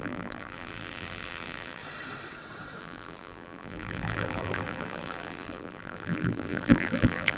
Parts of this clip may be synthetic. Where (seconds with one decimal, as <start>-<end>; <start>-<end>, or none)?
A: 0.0-1.8; 2.8-7.4